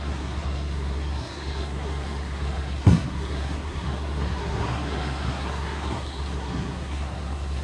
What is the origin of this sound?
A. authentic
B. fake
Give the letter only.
B